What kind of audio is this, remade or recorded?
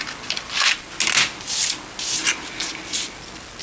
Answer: recorded